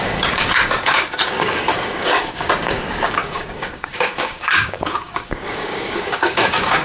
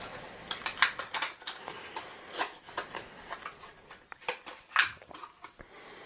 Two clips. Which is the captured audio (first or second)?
second